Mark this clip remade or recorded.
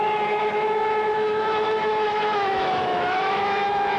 remade